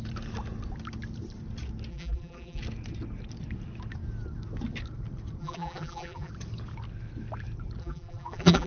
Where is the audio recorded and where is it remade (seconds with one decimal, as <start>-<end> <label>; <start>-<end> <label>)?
0.0-1.9 recorded; 1.9-2.6 remade; 2.6-5.4 recorded; 5.4-6.3 remade; 6.3-7.8 recorded; 7.8-8.7 remade